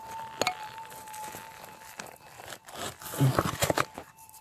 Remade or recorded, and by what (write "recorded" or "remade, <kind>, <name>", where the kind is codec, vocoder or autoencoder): recorded